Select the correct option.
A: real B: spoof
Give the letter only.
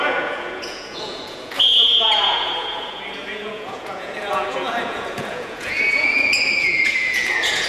B